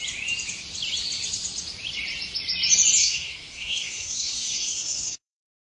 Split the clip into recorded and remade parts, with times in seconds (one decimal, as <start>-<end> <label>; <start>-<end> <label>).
0.0-3.0 recorded; 3.0-5.6 remade

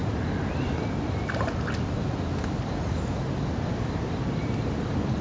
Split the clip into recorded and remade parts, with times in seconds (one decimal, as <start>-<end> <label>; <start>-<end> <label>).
0.0-5.2 recorded

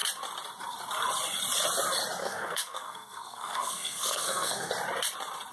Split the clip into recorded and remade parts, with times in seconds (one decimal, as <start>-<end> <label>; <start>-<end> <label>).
0.0-2.2 recorded; 2.2-4.7 remade; 4.7-5.5 recorded

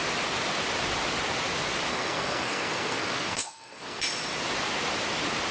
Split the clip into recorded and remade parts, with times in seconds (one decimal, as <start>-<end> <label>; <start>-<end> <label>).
0.0-1.9 recorded; 1.9-4.0 remade; 4.0-5.5 recorded

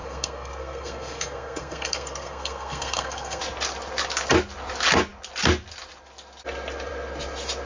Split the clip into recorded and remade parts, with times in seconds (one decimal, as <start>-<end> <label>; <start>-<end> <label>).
0.0-3.4 remade; 3.4-7.7 recorded

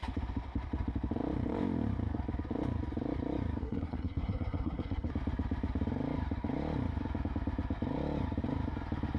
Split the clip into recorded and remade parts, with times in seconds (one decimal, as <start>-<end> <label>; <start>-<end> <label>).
0.0-3.6 recorded; 3.6-5.1 remade; 5.1-9.2 recorded

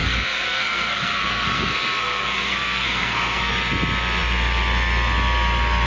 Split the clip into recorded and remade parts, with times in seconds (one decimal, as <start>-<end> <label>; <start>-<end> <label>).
0.0-3.5 remade; 3.5-5.9 recorded